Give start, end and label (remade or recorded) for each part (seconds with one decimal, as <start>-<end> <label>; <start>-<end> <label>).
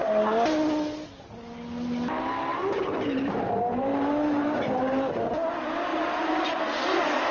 0.0-2.5 recorded; 2.5-4.8 remade; 4.8-5.9 recorded; 5.9-6.6 remade; 6.6-7.3 recorded